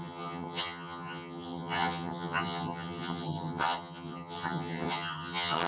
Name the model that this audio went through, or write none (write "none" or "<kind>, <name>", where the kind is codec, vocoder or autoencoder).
vocoder, HiFi-GAN